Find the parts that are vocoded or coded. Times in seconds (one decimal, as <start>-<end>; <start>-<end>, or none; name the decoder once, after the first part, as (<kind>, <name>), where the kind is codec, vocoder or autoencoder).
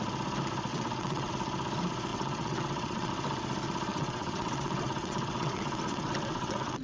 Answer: 0.7-1.3 (vocoder, WaveNeXt); 2.1-3.1; 3.9-6.8